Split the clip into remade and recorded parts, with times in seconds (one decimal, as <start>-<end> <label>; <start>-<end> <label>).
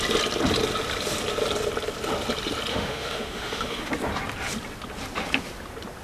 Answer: 0.0-2.7 recorded; 2.7-3.9 remade; 3.9-6.0 recorded